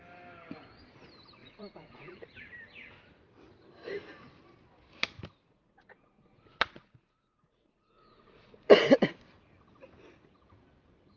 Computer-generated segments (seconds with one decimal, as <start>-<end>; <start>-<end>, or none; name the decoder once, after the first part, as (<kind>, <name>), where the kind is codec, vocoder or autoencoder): 1.4-2.1 (vocoder, Vocos); 5.5-9.1